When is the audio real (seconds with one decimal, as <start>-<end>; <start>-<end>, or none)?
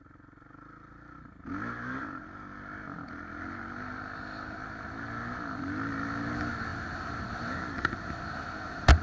0.0-9.0